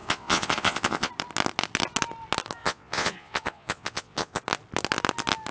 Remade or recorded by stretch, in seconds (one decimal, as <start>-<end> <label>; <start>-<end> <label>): 0.0-1.1 remade; 1.1-2.6 recorded; 2.6-4.4 remade; 4.4-5.5 recorded